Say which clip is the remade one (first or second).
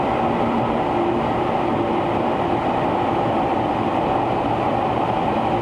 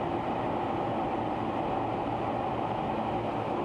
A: first